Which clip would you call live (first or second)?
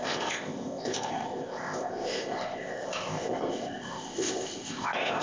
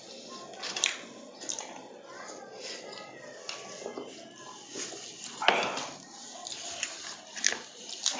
second